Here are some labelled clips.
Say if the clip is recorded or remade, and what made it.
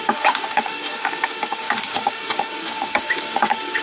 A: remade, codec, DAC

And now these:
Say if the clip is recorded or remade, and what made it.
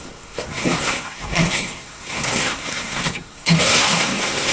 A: remade, codec, SNAC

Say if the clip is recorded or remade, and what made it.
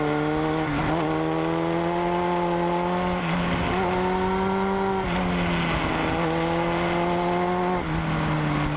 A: recorded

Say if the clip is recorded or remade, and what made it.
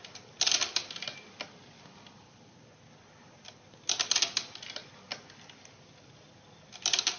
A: recorded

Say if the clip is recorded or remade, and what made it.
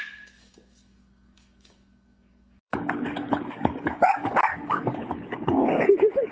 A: remade, codec, DAC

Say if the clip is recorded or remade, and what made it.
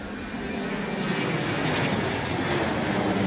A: recorded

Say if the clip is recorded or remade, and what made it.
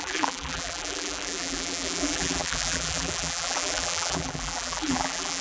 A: remade, vocoder, BigVGAN v2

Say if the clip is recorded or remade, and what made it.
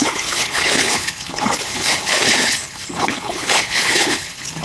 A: remade, codec, HILCodec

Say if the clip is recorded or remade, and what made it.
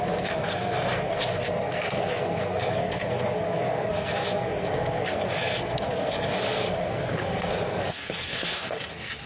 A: remade, codec, SNAC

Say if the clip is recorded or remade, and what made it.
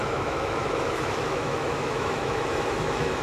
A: remade, autoencoder, DAC-VAE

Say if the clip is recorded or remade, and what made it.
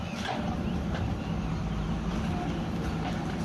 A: recorded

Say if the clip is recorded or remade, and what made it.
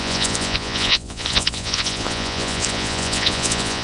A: remade, vocoder, Vocos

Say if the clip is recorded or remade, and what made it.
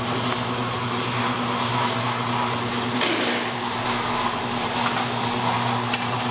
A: recorded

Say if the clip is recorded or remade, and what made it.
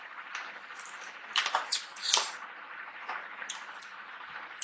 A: recorded